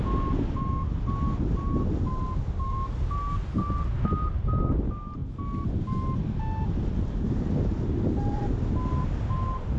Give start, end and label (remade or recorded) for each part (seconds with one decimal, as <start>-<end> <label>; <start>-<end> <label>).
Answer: 0.0-9.8 recorded